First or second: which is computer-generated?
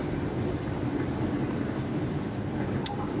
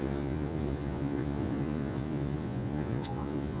second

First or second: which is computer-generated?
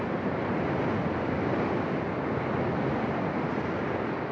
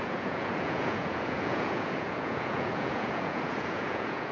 second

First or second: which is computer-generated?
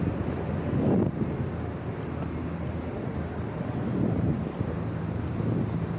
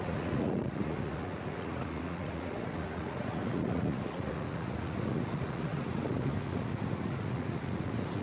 second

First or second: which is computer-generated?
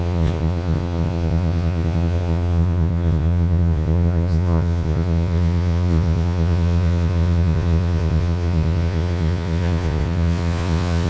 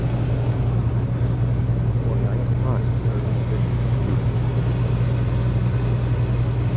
first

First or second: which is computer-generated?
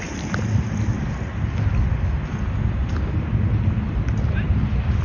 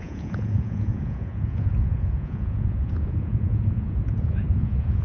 second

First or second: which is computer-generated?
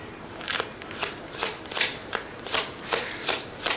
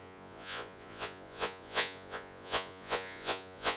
second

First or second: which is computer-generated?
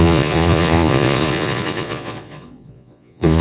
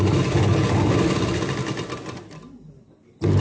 first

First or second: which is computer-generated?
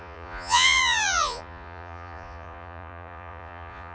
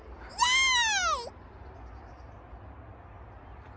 first